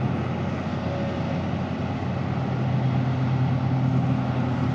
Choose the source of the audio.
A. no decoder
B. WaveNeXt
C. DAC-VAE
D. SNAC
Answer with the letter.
A